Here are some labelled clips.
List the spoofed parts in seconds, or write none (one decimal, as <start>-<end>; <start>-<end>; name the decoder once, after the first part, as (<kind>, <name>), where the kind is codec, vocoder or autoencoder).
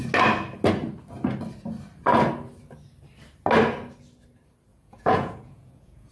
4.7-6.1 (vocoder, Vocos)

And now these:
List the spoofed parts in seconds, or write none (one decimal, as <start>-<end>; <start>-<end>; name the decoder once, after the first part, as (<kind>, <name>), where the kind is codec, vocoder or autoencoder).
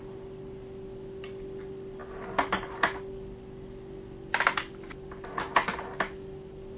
none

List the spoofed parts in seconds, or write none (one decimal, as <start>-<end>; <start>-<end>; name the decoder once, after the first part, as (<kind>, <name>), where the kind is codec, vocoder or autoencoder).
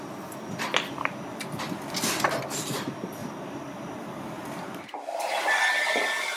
3.2-5.5 (vocoder, BigVGAN v2)